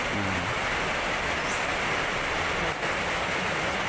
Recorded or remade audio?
recorded